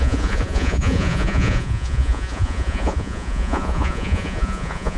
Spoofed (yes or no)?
yes